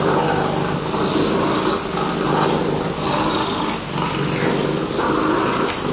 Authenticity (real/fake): real